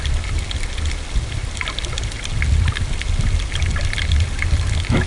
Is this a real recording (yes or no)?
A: yes